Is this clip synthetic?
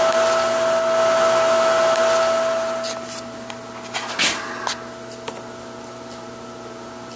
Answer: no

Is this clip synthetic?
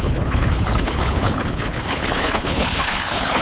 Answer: yes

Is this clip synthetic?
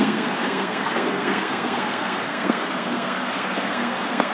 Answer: yes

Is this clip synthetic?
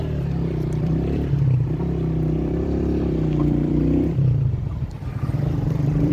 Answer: yes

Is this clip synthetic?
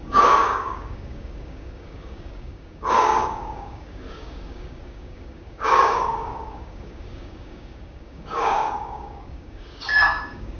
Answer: yes